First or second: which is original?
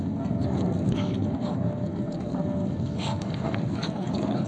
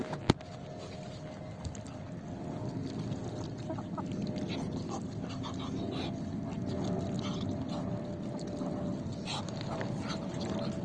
second